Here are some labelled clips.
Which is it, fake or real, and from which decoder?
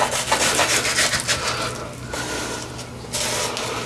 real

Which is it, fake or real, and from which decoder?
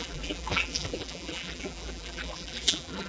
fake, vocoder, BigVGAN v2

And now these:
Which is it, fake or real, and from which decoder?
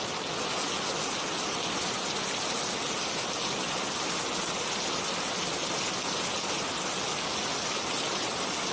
real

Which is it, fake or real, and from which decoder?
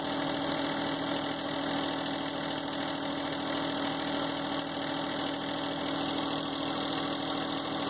real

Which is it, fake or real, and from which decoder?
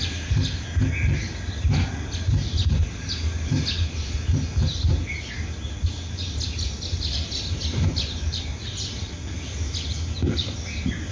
real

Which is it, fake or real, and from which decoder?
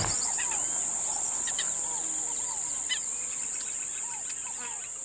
real